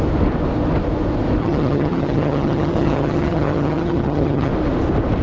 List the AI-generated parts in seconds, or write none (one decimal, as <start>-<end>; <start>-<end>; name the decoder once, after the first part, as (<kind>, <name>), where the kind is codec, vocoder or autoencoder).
1.4-4.5 (vocoder, HiFi-GAN)